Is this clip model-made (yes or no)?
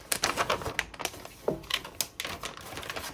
no